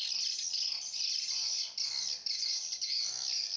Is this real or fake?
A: real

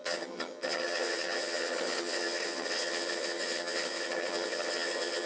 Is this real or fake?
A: fake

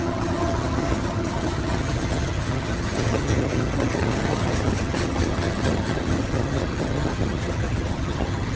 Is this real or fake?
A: fake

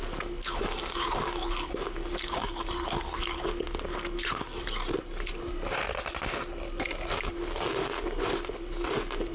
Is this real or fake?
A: real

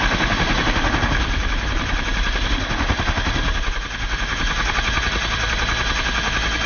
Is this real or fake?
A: real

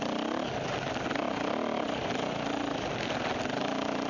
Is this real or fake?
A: real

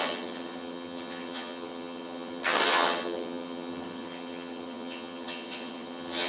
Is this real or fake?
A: fake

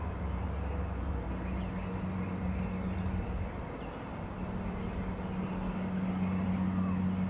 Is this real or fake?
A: real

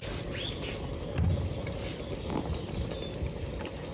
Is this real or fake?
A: real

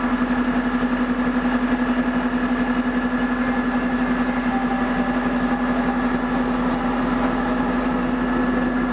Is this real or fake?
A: real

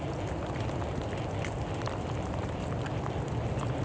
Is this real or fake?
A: real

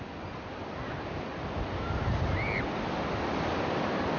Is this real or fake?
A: real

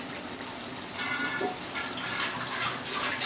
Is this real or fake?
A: real